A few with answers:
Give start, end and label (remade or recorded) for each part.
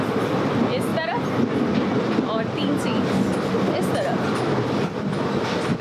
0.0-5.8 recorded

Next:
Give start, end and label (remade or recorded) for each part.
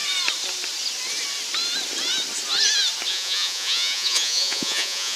0.0-3.1 recorded; 3.1-5.2 remade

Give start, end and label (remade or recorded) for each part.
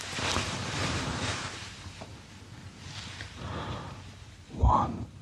0.0-2.1 remade; 2.1-3.0 recorded; 3.0-5.2 remade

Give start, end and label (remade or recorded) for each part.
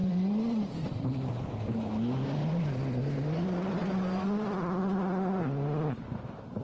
0.0-1.4 remade; 1.4-3.8 recorded; 3.8-6.6 remade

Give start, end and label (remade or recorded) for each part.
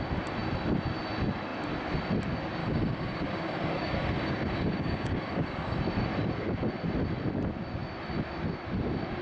0.0-2.6 recorded; 2.6-5.8 remade; 5.8-9.2 recorded